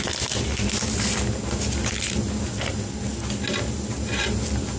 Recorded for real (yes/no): yes